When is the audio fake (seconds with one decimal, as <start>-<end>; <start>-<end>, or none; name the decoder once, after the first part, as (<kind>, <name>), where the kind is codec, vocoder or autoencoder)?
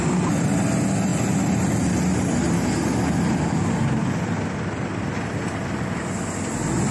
none